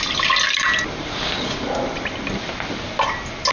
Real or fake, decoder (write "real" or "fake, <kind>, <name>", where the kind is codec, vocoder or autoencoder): real